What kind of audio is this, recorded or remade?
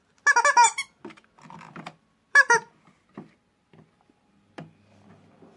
recorded